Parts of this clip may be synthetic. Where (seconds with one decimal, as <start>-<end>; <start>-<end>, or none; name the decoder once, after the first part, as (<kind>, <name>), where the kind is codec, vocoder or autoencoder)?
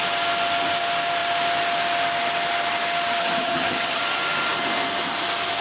3.2-4.0 (vocoder, HiFi-GAN)